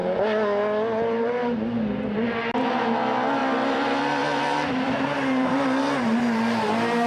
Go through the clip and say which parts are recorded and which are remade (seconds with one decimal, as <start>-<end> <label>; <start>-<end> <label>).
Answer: 0.0-3.4 recorded; 3.4-6.2 remade; 6.2-7.1 recorded